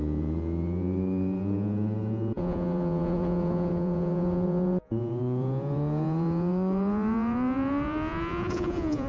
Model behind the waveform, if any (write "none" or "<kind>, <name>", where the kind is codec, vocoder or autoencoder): vocoder, Vocos